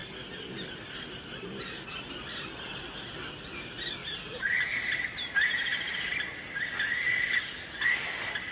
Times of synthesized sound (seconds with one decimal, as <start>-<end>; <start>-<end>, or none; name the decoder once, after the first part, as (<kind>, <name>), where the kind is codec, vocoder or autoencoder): 4.0-4.8 (vocoder, BigVGAN v2); 5.7-8.0

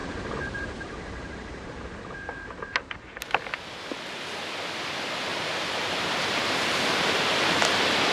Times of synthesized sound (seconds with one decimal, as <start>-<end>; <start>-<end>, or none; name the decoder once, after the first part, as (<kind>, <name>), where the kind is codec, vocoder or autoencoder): 0.0-1.9 (vocoder, BigVGAN v2); 5.3-7.1

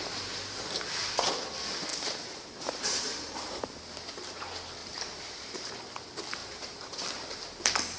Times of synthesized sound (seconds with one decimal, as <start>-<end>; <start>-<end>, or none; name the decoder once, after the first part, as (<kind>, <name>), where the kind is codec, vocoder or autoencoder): 1.9-3.6 (vocoder, BigVGAN v2); 4.8-5.7; 6.4-7.1

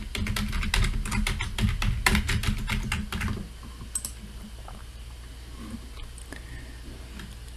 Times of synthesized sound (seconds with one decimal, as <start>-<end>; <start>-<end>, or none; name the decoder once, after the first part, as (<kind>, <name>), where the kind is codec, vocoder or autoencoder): 4.1-5.3 (vocoder, BigVGAN v2)

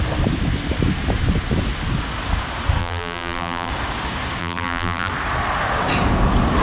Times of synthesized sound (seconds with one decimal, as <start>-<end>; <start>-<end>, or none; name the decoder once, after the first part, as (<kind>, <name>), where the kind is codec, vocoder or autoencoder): 2.8-3.7 (vocoder, BigVGAN v2); 4.4-5.1

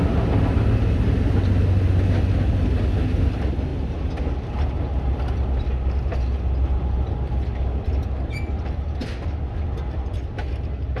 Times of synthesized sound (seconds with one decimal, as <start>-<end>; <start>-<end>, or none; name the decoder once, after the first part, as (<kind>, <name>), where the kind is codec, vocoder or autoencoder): 3.7-4.5 (vocoder, BigVGAN v2)

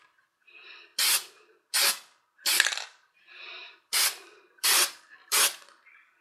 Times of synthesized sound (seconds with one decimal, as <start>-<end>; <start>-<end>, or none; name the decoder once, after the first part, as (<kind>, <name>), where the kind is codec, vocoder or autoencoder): 0.0-0.9 (vocoder, BigVGAN v2); 2.5-6.2